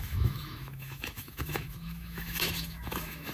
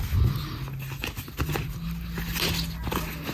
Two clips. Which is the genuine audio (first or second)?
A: second